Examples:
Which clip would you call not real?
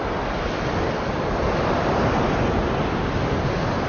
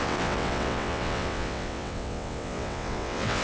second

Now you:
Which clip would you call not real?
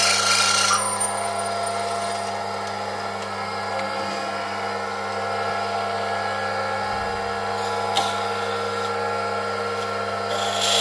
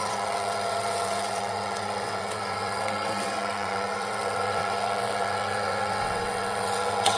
second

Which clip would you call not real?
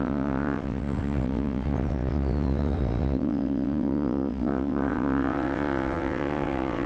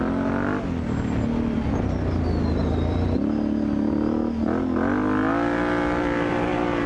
first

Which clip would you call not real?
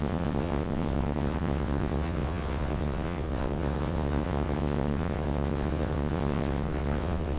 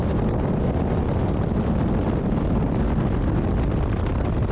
first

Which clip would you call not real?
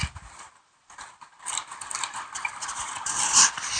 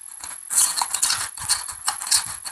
second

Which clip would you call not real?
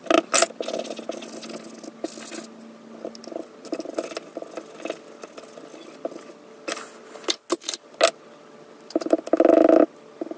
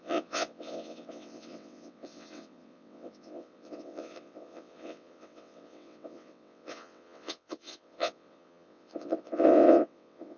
second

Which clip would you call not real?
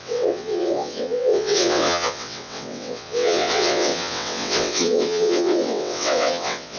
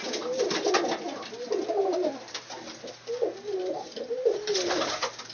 first